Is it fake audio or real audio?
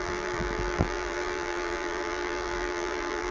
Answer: fake